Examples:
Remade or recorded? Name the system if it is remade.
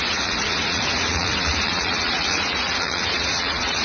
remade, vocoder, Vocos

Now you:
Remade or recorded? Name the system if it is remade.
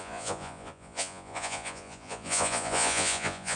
remade, vocoder, Vocos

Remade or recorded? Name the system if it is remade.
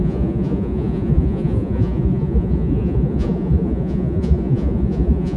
remade, vocoder, Vocos